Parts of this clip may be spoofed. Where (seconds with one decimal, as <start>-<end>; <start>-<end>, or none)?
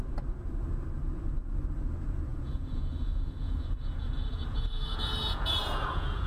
2.3-6.3